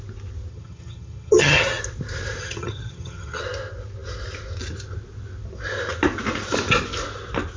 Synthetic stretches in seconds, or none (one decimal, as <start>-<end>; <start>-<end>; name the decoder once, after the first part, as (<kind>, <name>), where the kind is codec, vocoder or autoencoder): 0.5-1.8 (vocoder, HiFi-GAN); 2.4-3.4